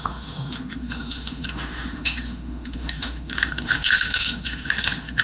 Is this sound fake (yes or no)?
yes